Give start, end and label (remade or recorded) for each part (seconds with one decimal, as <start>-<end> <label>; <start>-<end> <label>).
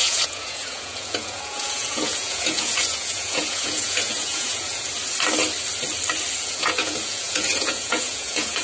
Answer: 0.0-4.9 remade; 4.9-6.4 recorded; 6.4-8.6 remade